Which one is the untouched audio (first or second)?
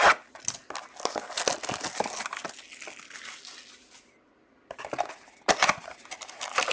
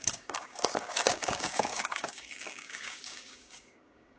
first